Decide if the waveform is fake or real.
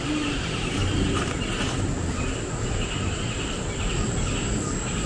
real